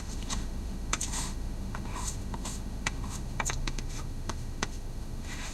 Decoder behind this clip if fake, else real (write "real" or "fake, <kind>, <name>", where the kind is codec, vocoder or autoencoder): fake, autoencoder, DAC-VAE